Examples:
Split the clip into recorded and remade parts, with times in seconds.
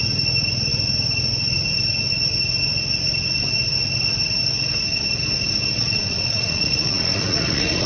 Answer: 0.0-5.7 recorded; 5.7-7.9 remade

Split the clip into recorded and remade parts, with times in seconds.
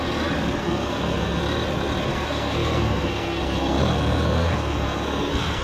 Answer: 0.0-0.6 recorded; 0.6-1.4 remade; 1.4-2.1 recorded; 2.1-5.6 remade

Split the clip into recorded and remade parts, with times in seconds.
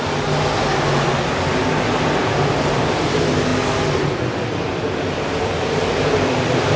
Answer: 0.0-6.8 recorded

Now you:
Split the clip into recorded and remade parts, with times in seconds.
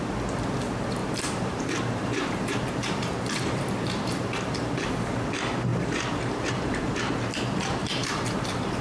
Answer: 0.0-1.0 recorded; 1.0-4.9 remade; 4.9-5.7 recorded; 5.7-7.0 remade; 7.0-7.8 recorded; 7.8-8.8 remade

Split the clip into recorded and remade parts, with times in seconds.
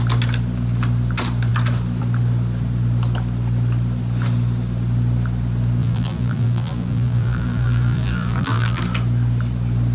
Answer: 0.0-5.8 recorded; 5.8-8.8 remade; 8.8-9.9 recorded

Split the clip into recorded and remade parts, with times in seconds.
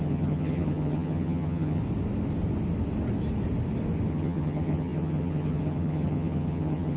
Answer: 0.0-1.8 remade; 1.8-4.1 recorded; 4.1-7.0 remade